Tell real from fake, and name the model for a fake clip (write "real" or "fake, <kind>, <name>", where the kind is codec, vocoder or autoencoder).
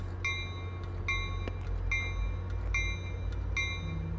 real